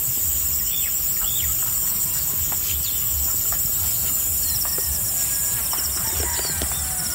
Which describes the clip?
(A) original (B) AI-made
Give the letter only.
A